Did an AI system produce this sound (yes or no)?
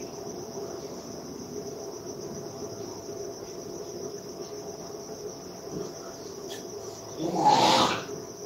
no